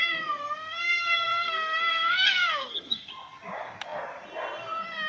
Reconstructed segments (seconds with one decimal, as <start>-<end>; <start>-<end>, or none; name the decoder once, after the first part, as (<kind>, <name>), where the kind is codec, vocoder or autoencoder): 0.0-3.1 (codec, SNAC)